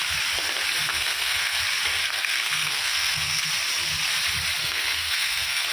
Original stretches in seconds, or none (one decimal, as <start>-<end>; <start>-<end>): 0.0-0.9; 1.6-2.0; 3.5-4.6